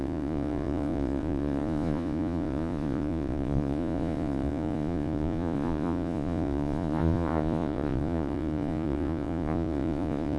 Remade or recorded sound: remade